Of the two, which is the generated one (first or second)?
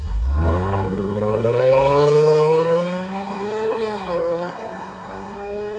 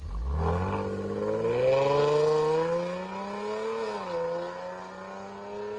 first